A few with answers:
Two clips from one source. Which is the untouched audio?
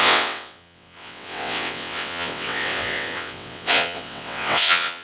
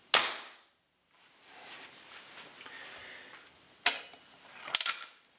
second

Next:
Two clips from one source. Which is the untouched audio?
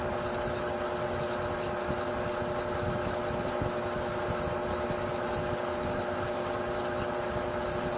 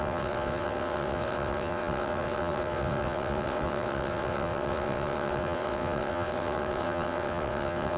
first